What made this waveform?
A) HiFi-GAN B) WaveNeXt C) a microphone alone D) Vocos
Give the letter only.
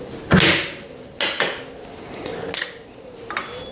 C